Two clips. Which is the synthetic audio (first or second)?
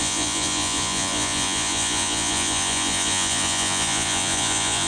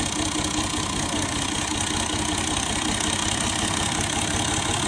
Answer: first